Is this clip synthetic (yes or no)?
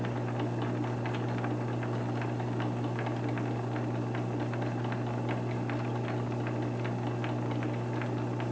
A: no